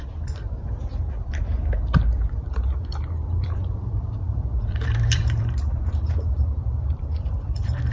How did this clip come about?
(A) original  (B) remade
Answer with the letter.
B